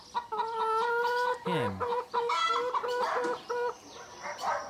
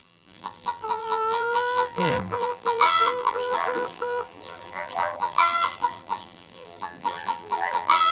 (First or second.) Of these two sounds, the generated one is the second